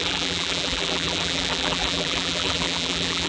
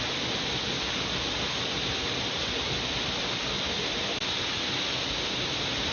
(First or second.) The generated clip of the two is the first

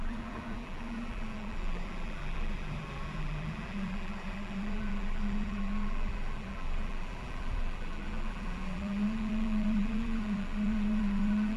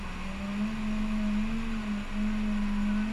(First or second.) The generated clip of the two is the first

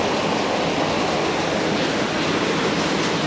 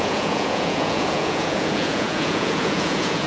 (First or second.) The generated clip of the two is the second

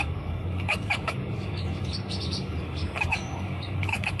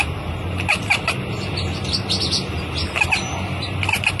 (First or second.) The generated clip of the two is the first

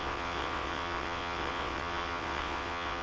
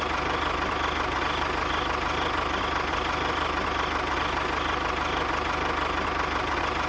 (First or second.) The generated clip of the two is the first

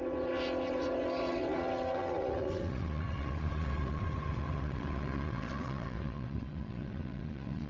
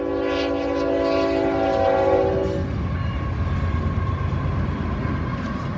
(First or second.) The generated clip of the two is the first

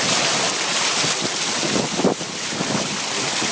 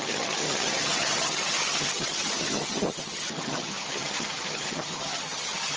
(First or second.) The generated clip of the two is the second